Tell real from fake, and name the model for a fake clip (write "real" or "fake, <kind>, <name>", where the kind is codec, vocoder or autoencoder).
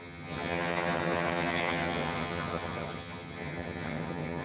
fake, vocoder, HiFi-GAN